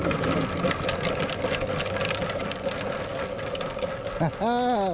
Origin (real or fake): real